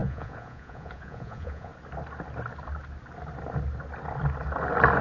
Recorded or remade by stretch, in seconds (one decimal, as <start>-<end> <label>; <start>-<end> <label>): 0.0-1.7 remade; 1.7-5.0 recorded